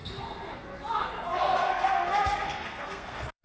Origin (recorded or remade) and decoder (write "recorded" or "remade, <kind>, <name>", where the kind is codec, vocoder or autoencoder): remade, codec, SNAC